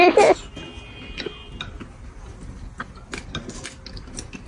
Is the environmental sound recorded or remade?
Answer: recorded